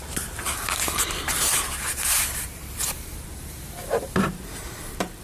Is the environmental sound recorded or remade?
remade